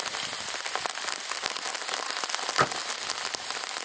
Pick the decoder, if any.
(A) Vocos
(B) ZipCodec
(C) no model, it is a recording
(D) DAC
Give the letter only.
C